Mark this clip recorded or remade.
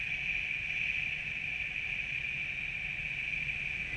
recorded